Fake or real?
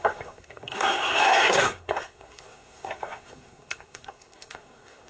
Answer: fake